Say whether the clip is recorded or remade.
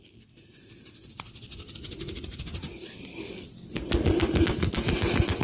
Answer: recorded